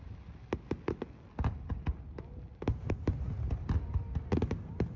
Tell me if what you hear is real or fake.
real